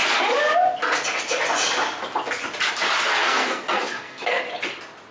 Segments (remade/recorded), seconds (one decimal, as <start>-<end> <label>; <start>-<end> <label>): 0.0-3.2 recorded; 3.2-4.4 remade; 4.4-5.1 recorded